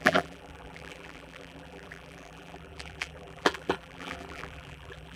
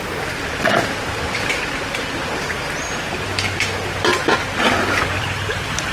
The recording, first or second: second